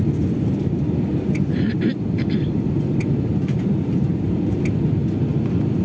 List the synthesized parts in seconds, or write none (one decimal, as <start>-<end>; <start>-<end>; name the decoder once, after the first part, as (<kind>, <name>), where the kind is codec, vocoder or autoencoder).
1.1-4.6 (vocoder, BigVGAN v2)